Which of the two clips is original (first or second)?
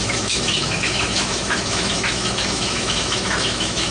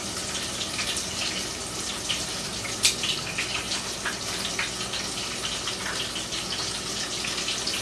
second